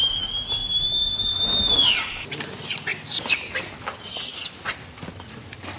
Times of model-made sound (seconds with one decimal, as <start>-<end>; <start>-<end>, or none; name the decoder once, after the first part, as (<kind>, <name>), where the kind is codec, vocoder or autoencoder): none